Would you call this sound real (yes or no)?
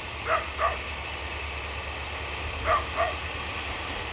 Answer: yes